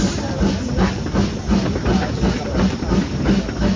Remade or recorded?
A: recorded